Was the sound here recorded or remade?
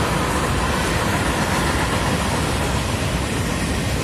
recorded